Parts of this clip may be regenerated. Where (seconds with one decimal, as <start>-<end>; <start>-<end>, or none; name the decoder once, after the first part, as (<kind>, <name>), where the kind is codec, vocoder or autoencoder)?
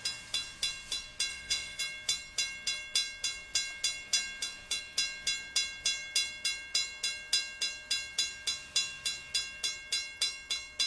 1.3-1.8 (vocoder, Vocos)